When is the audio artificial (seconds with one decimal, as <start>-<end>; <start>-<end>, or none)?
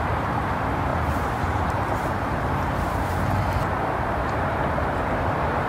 0.0-5.7